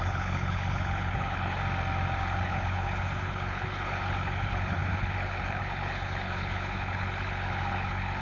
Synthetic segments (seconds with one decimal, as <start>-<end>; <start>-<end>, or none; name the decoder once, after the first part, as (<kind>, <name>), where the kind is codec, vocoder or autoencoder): 0.0-1.6 (codec, HILCodec); 2.2-8.2